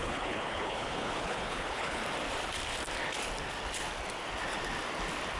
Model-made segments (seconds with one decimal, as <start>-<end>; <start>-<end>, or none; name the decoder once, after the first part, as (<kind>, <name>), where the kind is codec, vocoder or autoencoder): 0.0-2.0 (codec, HILCodec)